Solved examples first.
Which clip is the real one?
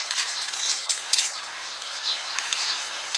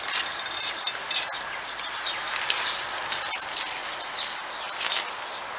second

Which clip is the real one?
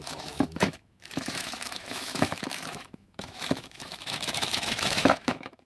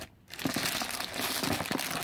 second